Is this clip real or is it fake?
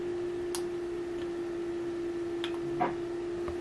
real